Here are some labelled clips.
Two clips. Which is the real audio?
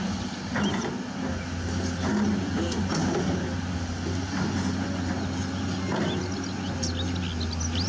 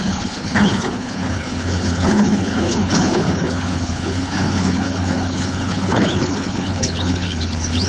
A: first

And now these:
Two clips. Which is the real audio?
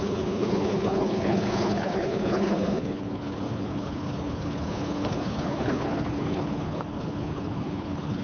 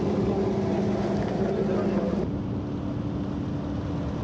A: second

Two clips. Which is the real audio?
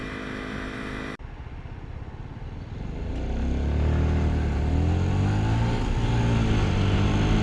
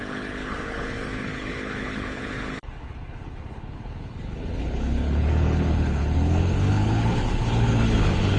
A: first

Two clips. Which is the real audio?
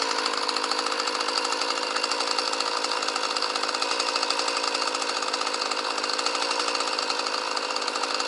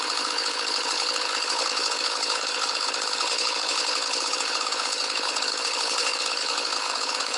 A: first